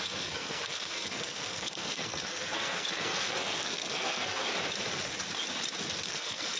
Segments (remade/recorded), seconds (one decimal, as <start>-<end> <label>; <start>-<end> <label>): 0.0-4.4 remade; 4.4-6.1 recorded; 6.1-6.6 remade